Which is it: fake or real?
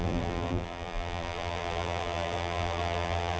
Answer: fake